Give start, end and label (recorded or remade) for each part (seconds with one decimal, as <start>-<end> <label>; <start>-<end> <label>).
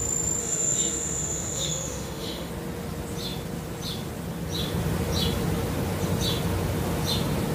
0.0-0.4 recorded; 0.4-2.5 remade; 2.5-7.5 recorded